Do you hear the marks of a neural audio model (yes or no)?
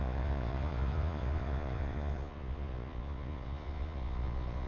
yes